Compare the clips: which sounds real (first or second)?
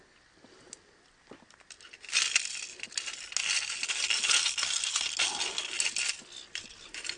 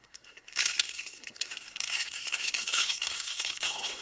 first